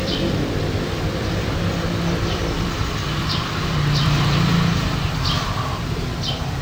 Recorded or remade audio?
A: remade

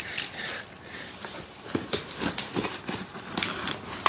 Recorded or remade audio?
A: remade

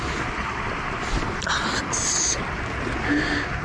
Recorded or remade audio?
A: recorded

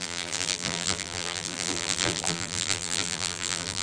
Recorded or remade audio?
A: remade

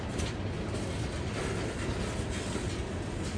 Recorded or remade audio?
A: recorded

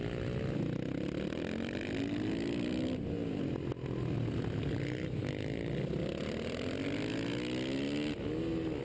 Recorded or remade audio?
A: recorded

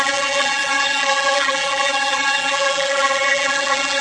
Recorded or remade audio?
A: remade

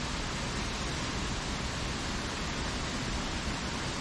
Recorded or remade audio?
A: recorded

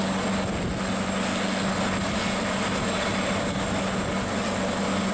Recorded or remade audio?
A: recorded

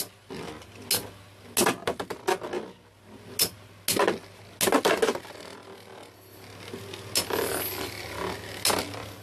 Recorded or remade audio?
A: recorded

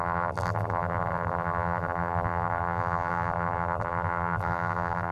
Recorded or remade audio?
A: remade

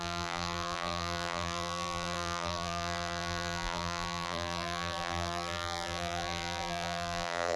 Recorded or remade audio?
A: remade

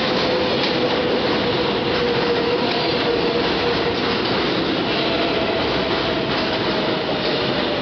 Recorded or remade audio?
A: recorded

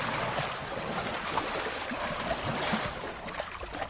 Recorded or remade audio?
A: recorded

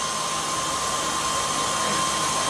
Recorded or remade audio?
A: recorded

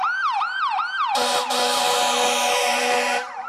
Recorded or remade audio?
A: remade